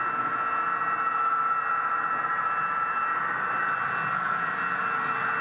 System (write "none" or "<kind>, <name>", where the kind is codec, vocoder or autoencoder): none